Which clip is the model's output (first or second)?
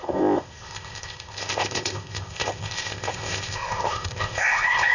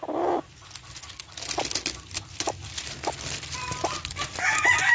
first